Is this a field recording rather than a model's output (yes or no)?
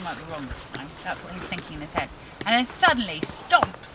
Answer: yes